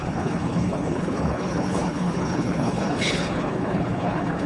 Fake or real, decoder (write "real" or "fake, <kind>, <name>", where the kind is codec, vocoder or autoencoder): fake, codec, HILCodec